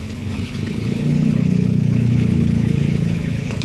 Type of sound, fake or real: fake